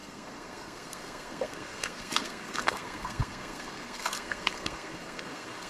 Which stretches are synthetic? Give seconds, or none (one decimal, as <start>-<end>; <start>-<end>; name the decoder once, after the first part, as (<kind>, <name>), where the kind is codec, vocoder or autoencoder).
0.0-5.7 (codec, SNAC)